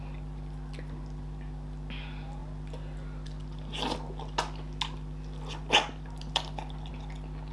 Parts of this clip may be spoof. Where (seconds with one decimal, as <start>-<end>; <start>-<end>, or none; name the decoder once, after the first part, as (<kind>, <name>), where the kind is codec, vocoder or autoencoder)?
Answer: none